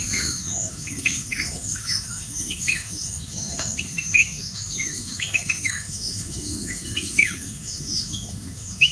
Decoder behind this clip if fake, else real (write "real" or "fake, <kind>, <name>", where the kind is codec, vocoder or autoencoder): fake, autoencoder, DAC-VAE